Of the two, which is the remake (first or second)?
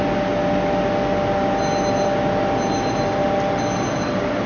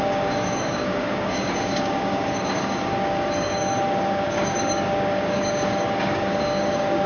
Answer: second